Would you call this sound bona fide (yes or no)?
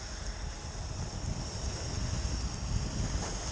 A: yes